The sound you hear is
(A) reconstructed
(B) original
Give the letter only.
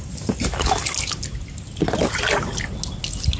B